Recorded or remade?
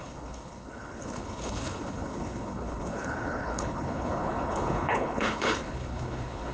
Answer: remade